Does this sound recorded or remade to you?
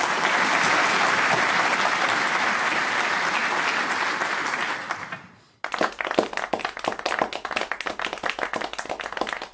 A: recorded